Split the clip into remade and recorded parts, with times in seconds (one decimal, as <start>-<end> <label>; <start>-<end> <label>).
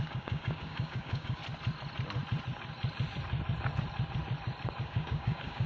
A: 0.0-1.4 remade; 1.4-4.8 recorded; 4.8-5.7 remade